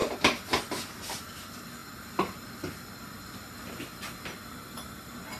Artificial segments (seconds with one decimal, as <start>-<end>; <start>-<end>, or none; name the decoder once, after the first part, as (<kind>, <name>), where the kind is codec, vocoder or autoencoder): none